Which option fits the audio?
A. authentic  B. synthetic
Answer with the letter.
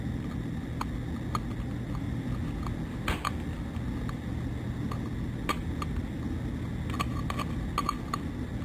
A